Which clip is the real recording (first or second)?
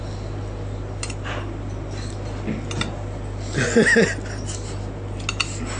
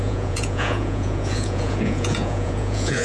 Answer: first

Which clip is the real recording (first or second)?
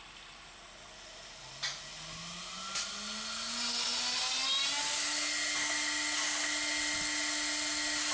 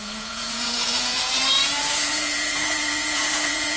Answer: first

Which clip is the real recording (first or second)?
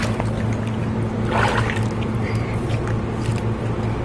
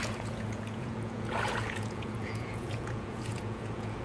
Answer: first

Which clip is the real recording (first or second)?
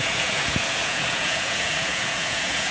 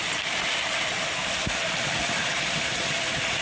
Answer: second